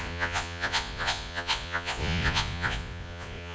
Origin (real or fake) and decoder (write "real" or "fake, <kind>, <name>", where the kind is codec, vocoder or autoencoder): fake, vocoder, Vocos